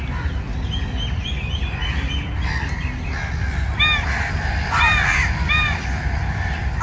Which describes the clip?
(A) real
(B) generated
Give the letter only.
A